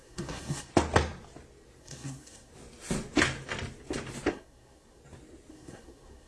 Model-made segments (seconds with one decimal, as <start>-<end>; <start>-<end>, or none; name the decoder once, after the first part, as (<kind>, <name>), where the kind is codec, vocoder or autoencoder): 0.0-0.7 (codec, SNAC); 1.8-2.5; 4.3-5.0; 5.5-6.3